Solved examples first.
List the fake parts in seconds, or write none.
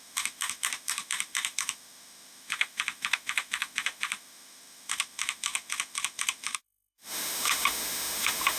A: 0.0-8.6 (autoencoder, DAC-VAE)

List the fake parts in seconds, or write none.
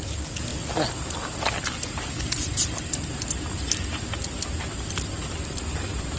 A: none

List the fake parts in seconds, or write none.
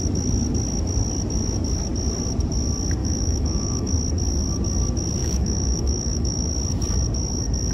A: 3.0-3.9 (autoencoder, DAC-VAE); 5.2-6.5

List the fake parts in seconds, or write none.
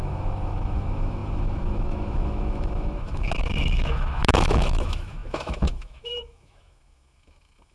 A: 0.0-7.7 (autoencoder, DAC-VAE)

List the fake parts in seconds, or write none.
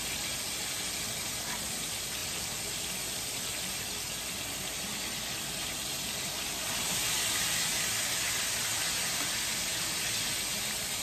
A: none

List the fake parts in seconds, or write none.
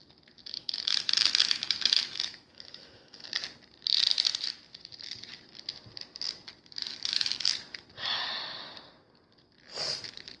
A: 0.6-3.3 (autoencoder, DAC-VAE); 6.9-7.5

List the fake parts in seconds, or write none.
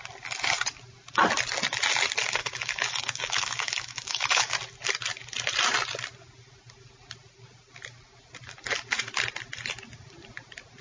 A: 2.4-4.5 (autoencoder, DAC-VAE)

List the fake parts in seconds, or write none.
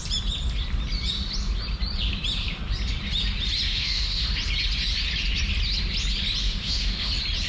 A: 3.7-4.3 (autoencoder, DAC-VAE); 6.4-7.1